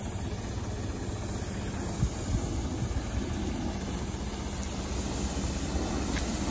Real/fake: real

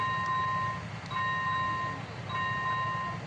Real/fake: real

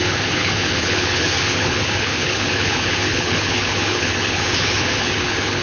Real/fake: fake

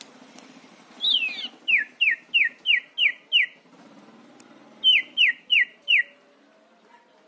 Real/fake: real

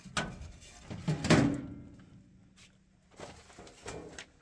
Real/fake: real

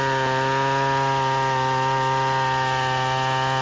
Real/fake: real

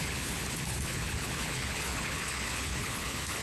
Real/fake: fake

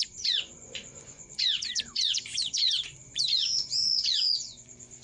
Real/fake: fake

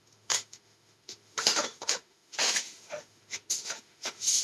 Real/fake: fake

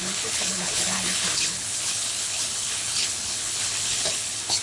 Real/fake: fake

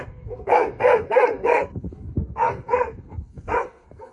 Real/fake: fake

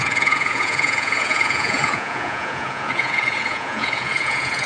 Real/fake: fake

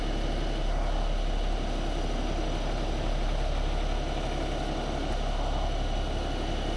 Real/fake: real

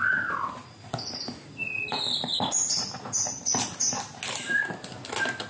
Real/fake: real